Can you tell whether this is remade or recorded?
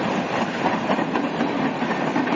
remade